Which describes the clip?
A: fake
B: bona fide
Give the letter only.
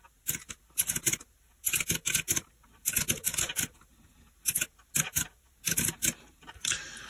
B